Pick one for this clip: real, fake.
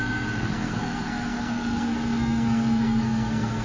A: fake